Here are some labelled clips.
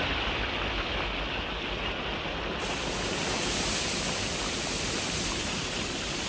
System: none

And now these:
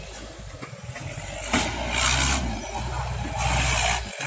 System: none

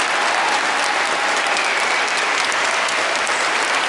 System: none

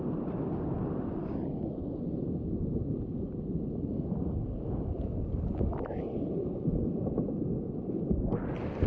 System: none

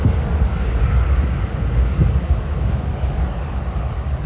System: codec, DAC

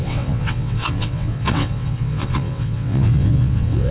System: vocoder, WaveNeXt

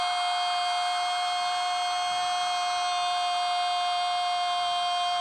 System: none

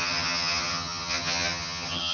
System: vocoder, HiFi-GAN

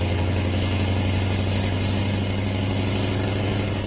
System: none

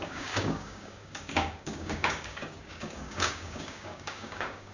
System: codec, DAC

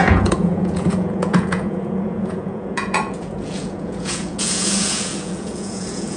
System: vocoder, Vocos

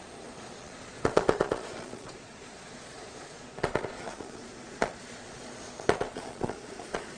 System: vocoder, Vocos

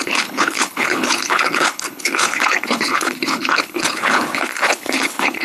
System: codec, HILCodec